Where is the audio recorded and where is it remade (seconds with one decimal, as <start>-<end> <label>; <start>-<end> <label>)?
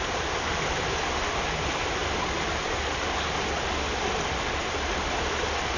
0.0-5.8 recorded